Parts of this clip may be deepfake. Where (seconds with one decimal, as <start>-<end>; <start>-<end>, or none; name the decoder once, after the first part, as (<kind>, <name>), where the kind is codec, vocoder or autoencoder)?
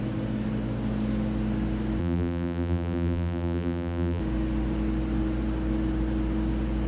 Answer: 2.0-4.2 (vocoder, BigVGAN v2)